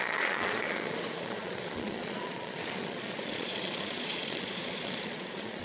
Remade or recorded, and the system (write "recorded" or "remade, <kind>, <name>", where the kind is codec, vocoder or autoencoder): remade, vocoder, Vocos